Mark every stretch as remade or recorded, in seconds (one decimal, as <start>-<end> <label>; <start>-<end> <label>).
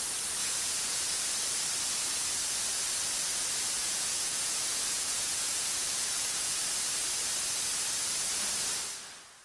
0.0-0.4 recorded; 0.4-1.2 remade; 1.2-3.8 recorded; 3.8-6.6 remade; 6.6-9.4 recorded